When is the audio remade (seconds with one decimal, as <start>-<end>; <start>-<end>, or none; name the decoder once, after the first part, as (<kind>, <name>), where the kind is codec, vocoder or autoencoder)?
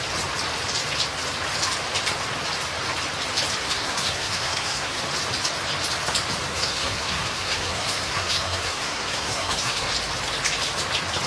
3.6-5.0 (codec, SNAC); 6.5-9.9